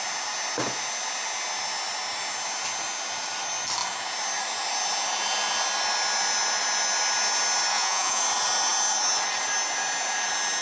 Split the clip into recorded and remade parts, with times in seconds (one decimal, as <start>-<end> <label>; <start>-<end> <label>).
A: 0.0-7.7 recorded; 7.7-8.2 remade; 8.2-10.6 recorded